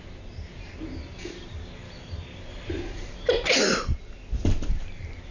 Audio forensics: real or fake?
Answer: real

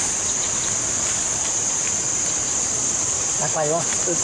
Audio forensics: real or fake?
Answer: real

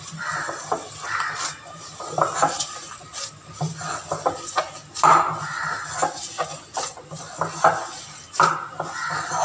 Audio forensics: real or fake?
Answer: real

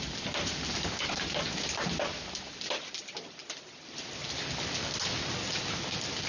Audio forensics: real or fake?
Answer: real